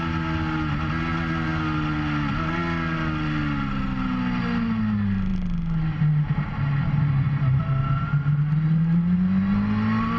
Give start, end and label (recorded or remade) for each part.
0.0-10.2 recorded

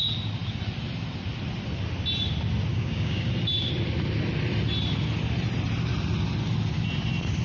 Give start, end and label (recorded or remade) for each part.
0.0-2.7 recorded; 2.7-3.3 remade; 3.3-7.4 recorded

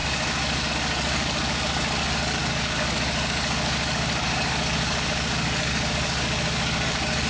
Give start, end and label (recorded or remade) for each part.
0.0-7.3 remade

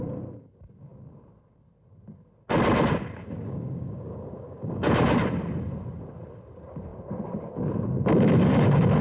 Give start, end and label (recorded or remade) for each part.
0.0-3.2 recorded; 3.2-5.2 remade; 5.2-9.0 recorded